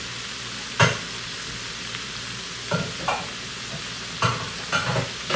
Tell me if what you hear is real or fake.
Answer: real